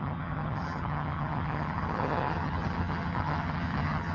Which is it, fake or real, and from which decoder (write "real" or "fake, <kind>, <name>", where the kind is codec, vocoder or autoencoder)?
fake, vocoder, HiFi-GAN